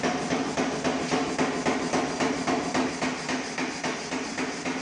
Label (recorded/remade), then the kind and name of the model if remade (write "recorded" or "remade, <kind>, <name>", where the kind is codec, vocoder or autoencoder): recorded